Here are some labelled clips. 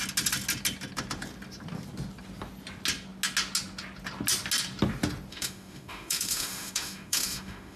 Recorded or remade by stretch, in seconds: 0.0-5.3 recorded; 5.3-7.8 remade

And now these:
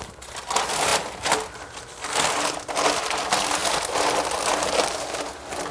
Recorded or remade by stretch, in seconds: 0.0-5.7 recorded

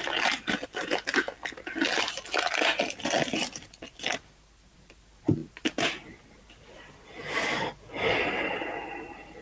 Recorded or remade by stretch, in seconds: 0.0-9.4 recorded

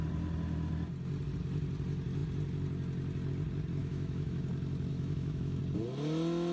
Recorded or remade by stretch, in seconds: 0.0-3.8 recorded; 3.8-4.4 remade; 4.4-4.9 recorded; 4.9-5.6 remade; 5.6-6.5 recorded